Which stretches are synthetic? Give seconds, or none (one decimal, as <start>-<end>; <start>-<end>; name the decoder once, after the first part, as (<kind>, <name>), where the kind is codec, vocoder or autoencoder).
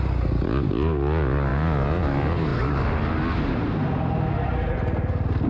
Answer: none